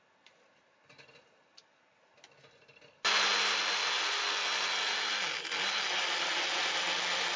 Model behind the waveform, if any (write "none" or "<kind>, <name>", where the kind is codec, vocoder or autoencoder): none